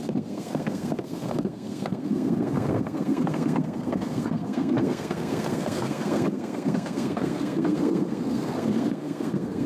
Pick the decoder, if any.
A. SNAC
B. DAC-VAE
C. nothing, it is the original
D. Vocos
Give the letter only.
A